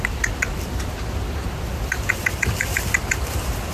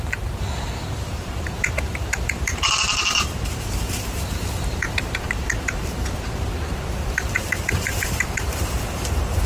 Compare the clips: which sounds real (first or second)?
first